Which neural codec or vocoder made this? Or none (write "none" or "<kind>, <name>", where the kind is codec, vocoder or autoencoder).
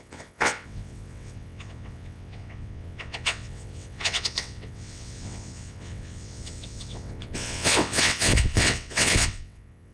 vocoder, WaveNeXt